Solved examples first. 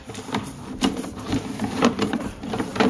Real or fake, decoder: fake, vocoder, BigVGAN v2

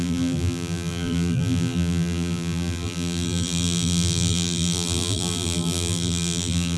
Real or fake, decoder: fake, vocoder, BigVGAN v2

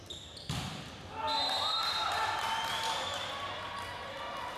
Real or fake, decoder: real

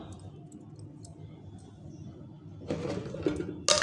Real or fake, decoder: real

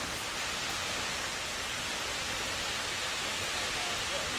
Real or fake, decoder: real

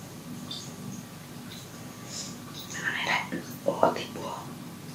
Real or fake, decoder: real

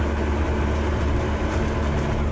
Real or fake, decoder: real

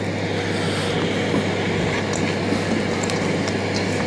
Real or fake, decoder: real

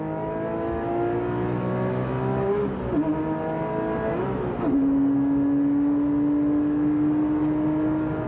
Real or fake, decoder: real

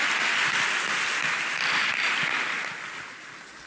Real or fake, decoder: real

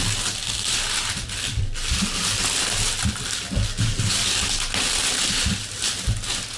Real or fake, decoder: real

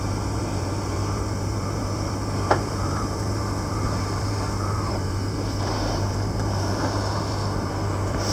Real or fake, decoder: fake, vocoder, BigVGAN v2